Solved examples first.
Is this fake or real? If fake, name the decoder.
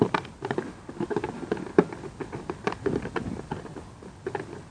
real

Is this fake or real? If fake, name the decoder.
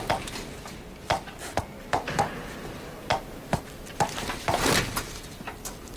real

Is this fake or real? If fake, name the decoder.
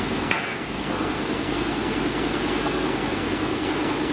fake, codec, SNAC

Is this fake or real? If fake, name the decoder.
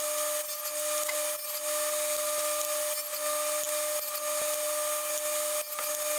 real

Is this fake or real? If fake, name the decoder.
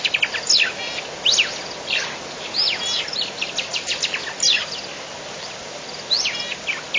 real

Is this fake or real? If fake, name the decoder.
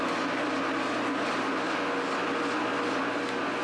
real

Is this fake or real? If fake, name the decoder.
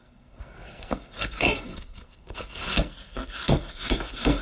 fake, codec, SNAC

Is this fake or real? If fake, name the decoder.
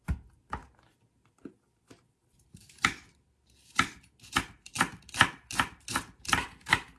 real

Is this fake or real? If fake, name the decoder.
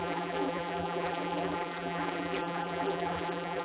fake, vocoder, BigVGAN v2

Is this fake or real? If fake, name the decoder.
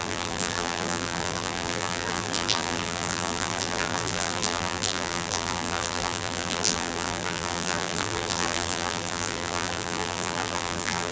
fake, vocoder, BigVGAN v2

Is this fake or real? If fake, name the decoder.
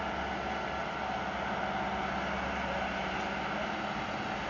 real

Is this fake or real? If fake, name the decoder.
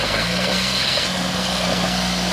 fake, codec, SNAC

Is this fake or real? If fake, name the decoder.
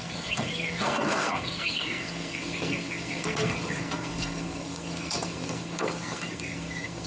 fake, codec, SNAC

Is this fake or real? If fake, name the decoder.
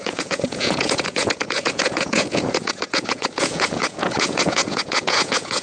fake, vocoder, Vocos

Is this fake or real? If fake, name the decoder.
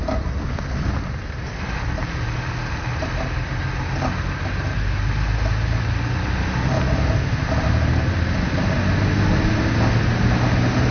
real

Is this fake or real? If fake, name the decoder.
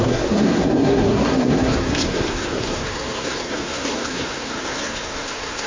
fake, codec, SNAC